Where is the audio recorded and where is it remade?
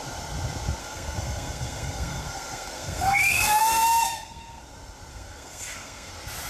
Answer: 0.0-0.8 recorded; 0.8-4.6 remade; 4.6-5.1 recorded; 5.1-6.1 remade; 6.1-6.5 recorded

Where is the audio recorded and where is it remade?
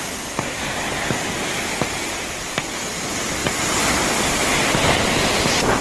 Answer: 0.0-5.8 recorded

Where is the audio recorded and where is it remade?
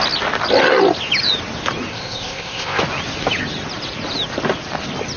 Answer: 0.0-1.9 recorded; 1.9-2.8 remade; 2.8-5.2 recorded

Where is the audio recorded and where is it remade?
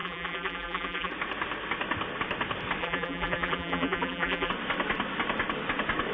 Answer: 0.0-1.1 remade; 1.1-2.8 recorded; 2.8-4.5 remade; 4.5-6.1 recorded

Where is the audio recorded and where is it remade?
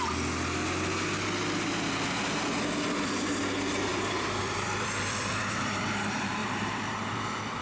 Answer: 0.0-3.9 recorded; 3.9-5.8 remade; 5.8-6.4 recorded; 6.4-7.6 remade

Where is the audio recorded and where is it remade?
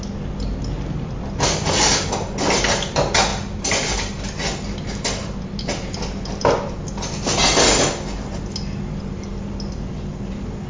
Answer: 0.0-10.7 recorded